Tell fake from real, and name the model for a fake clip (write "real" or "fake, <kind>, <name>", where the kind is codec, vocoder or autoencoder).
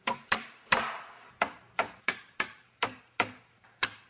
fake, vocoder, BigVGAN v2